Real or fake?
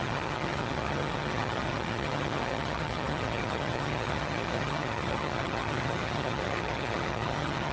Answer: fake